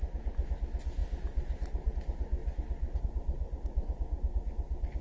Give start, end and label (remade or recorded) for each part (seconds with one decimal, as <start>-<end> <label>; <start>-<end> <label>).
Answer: 0.0-5.0 recorded